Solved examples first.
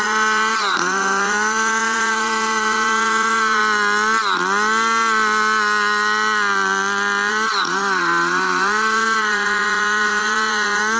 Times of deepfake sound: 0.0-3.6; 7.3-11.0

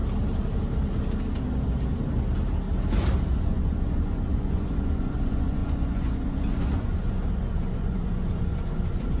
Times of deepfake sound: 3.3-9.2

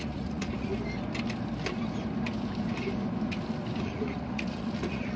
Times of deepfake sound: 0.0-0.7; 3.8-5.2

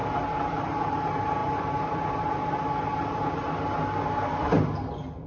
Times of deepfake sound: none